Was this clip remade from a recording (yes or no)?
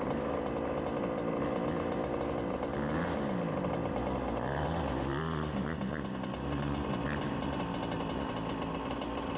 no